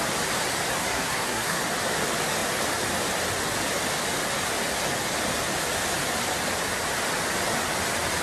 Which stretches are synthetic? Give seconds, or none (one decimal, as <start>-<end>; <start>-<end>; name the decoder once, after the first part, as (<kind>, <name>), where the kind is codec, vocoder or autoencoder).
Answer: 0.8-1.6 (codec, SNAC)